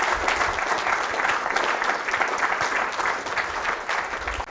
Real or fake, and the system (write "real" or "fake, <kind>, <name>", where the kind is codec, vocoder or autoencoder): real